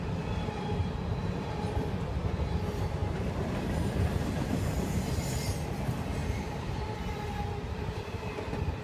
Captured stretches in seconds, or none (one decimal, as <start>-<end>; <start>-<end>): 0.0-0.8; 1.5-3.0; 5.0-6.2; 6.8-8.8